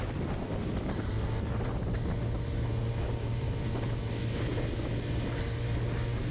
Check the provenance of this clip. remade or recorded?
recorded